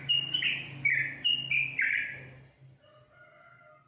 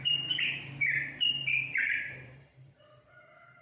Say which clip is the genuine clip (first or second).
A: first